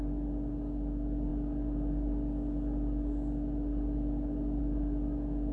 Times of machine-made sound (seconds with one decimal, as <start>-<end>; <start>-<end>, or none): none